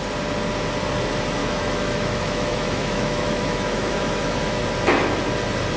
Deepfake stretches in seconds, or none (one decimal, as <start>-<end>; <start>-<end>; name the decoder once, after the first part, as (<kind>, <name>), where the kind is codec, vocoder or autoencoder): 1.4-4.6 (autoencoder, DAC-VAE)